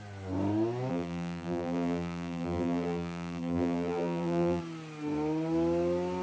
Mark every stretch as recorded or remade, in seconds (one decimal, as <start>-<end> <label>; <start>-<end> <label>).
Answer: 0.0-0.9 recorded; 0.9-4.6 remade; 4.6-6.2 recorded